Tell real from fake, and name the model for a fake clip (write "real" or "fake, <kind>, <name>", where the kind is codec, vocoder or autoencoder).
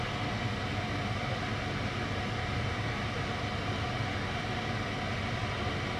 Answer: real